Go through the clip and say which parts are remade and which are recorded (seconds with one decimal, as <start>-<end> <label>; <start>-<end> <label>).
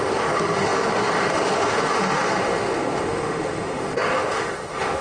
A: 0.0-5.0 remade